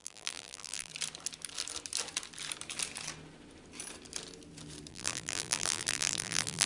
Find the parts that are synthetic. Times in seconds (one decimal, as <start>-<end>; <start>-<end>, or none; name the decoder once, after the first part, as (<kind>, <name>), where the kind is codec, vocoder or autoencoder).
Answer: 0.0-0.9 (vocoder, BigVGAN v2); 4.9-6.7